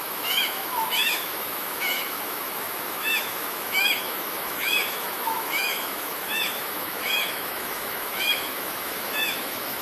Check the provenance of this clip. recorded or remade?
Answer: remade